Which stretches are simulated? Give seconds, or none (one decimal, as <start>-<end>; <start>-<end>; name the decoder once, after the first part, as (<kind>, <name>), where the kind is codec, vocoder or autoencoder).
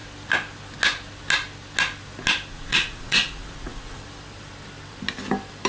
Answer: 2.5-4.0 (vocoder, Vocos)